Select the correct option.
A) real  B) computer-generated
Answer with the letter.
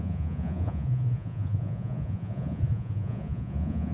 B